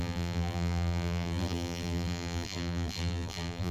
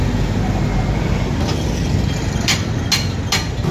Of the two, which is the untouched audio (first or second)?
second